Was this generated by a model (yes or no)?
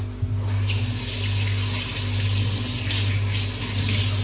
no